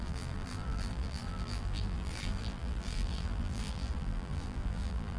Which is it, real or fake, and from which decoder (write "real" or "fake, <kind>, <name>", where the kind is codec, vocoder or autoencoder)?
fake, vocoder, BigVGAN v2